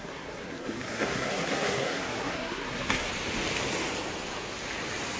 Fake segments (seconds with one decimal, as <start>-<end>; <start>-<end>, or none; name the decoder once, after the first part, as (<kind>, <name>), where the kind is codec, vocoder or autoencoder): 0.0-3.1 (codec, SNAC)